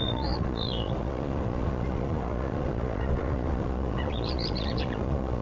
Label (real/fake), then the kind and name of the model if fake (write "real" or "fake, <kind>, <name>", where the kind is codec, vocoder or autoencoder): fake, vocoder, Vocos